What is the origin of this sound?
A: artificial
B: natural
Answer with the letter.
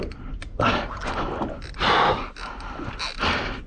B